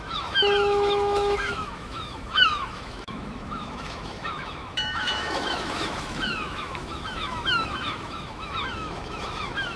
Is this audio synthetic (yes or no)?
yes